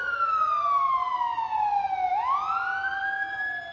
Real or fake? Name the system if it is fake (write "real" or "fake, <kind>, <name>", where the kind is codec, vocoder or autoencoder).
real